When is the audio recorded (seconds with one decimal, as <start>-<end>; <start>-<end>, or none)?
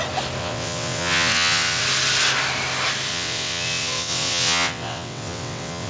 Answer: 0.0-0.4; 1.8-3.1